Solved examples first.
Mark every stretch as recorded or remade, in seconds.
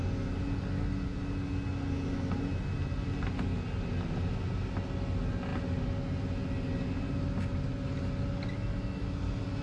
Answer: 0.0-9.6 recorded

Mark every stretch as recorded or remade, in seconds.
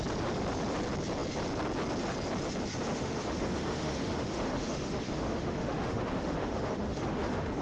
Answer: 0.0-2.9 recorded; 2.9-7.6 remade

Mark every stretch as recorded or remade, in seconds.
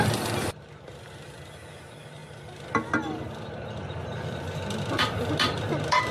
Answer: 0.0-6.1 recorded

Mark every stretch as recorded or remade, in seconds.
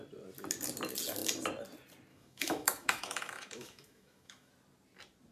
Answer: 0.0-2.1 recorded; 2.1-4.5 remade; 4.5-5.3 recorded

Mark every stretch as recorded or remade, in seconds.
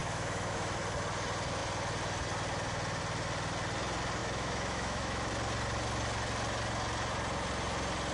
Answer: 0.0-0.8 remade; 0.8-4.2 recorded; 4.2-5.3 remade; 5.3-8.1 recorded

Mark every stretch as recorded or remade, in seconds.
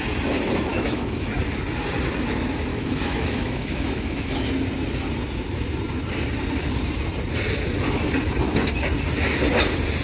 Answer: 0.0-0.7 recorded; 0.7-1.3 remade; 1.3-2.7 recorded; 2.7-4.5 remade; 4.5-10.0 recorded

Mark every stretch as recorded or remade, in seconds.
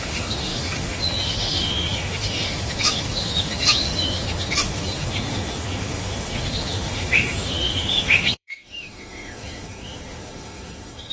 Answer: 0.0-11.1 remade